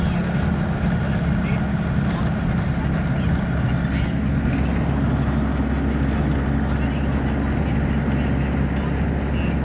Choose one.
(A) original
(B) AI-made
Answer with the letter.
A